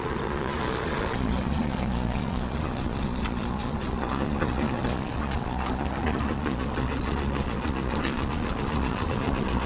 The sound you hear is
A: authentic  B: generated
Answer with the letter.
B